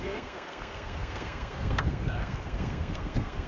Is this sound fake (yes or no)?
yes